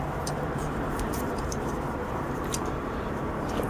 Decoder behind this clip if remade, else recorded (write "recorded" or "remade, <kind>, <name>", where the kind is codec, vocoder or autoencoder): remade, vocoder, BigVGAN v2